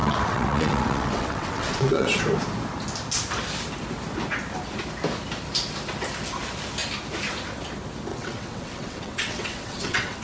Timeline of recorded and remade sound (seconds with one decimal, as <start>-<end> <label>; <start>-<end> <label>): 0.0-2.2 remade; 2.2-8.1 recorded; 8.1-10.2 remade